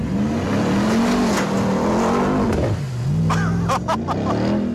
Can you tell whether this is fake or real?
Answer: real